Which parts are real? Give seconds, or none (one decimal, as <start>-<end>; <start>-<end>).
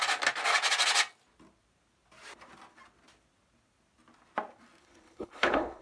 0.0-4.8